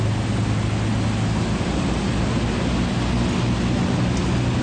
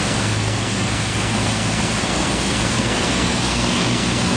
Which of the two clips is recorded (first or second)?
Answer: first